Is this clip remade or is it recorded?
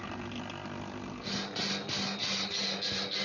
recorded